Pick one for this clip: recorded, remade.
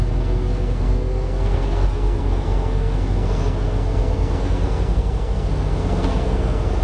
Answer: remade